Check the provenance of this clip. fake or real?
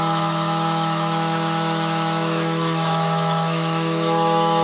fake